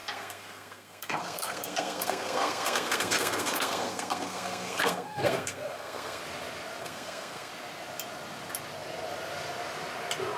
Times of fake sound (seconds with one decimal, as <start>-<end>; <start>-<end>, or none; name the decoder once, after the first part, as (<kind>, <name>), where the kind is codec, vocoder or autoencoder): 0.0-6.2 (codec, SNAC); 6.8-7.5